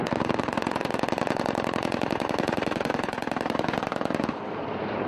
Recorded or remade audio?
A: remade